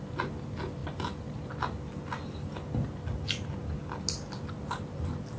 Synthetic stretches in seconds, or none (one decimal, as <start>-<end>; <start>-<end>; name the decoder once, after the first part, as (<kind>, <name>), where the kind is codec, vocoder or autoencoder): none